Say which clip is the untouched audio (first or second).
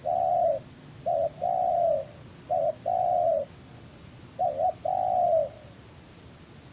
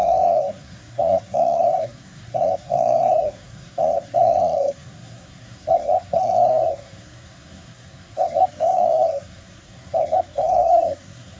first